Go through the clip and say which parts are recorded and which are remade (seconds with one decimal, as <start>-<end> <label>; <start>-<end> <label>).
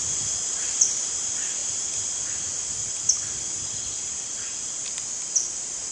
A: 0.0-5.9 recorded